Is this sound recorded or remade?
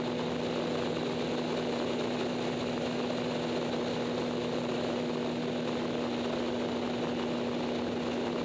recorded